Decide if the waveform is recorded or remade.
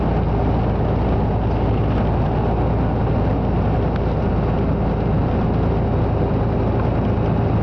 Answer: recorded